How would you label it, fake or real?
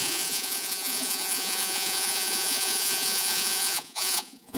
fake